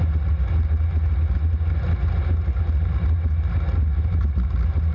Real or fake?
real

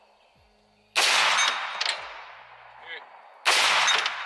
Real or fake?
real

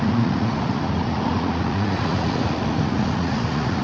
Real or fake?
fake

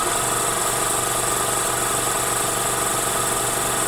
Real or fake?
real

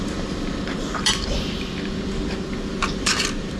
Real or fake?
fake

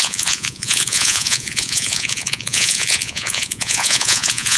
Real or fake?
fake